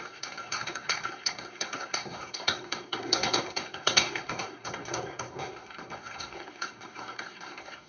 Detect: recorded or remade remade